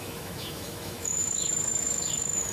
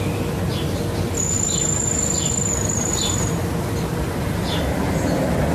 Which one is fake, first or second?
first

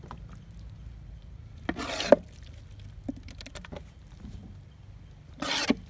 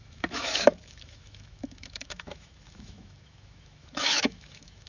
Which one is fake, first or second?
second